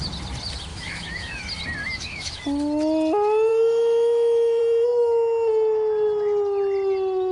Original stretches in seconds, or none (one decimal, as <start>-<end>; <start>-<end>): 0.0-0.7; 1.4-1.8; 2.4-3.5; 4.6-7.3